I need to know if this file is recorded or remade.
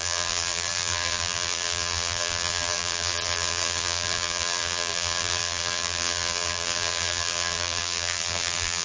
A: remade